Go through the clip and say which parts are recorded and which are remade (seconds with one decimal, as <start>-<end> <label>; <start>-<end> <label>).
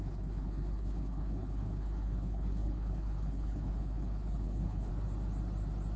0.0-4.9 remade; 4.9-6.0 recorded